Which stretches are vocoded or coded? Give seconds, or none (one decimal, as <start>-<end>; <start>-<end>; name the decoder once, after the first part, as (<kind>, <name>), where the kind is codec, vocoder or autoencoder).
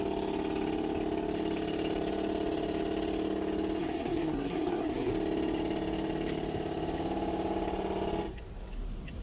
3.8-5.1 (codec, SNAC)